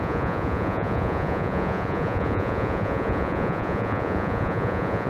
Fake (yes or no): yes